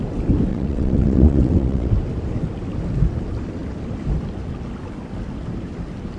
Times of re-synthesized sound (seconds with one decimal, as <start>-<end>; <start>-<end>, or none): 0.5-1.9